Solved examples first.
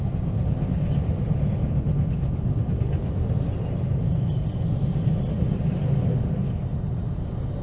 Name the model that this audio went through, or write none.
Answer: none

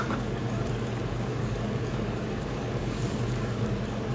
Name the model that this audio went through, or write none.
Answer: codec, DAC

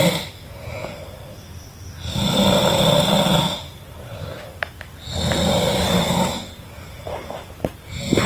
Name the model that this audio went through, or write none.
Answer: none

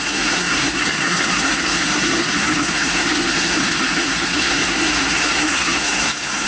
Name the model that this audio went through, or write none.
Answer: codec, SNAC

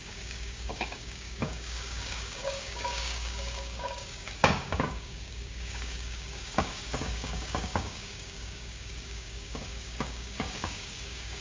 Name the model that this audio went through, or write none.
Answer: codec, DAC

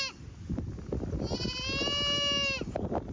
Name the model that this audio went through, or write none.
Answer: none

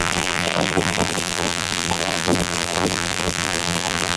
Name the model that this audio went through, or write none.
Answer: vocoder, BigVGAN v2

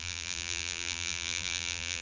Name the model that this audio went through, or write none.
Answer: vocoder, BigVGAN v2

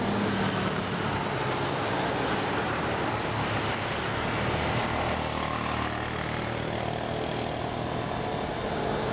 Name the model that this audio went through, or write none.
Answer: none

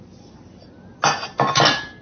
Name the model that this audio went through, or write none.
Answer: none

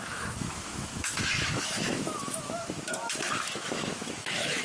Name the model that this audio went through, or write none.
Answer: autoencoder, DAC-VAE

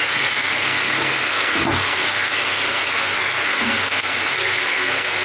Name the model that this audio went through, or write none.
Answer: codec, SNAC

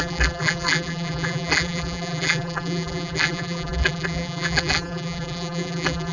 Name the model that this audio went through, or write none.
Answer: vocoder, BigVGAN v2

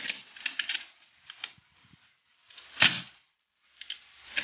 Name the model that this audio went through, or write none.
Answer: none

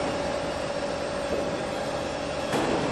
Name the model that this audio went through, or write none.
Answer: none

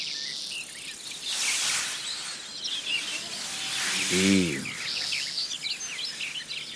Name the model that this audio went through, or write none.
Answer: none